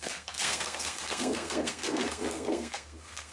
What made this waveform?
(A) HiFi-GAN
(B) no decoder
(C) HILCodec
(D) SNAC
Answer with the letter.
D